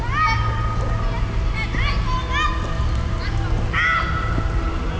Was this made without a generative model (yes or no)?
yes